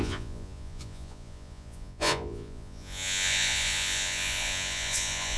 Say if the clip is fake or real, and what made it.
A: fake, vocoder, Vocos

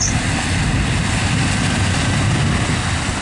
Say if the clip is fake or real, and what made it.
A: real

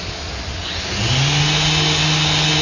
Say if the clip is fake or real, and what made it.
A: real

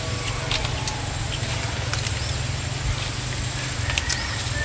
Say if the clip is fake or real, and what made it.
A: real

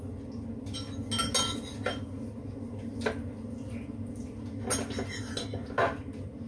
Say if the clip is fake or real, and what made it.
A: real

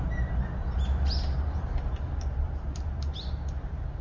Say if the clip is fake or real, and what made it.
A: real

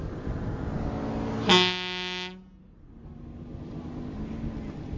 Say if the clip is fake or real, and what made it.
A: real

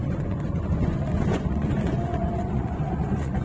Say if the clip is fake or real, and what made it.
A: fake, vocoder, Vocos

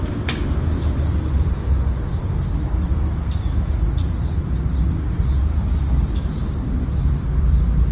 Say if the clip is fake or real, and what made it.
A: real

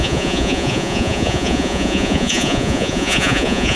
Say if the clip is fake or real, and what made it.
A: fake, vocoder, Vocos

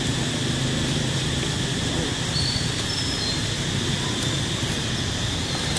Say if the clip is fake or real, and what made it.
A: real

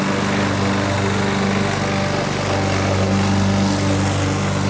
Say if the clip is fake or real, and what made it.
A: real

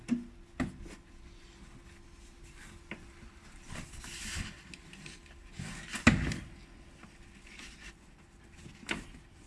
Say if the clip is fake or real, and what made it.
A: real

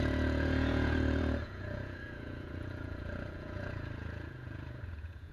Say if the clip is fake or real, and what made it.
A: fake, vocoder, Vocos